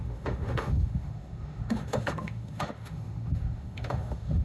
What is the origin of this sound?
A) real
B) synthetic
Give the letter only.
B